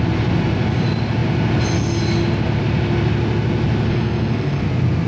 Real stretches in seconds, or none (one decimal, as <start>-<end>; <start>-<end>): 0.0-3.9; 4.6-5.1